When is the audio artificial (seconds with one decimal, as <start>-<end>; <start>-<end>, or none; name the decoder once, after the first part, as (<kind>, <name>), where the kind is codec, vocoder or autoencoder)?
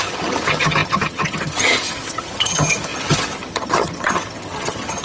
0.0-5.0 (vocoder, HiFi-GAN)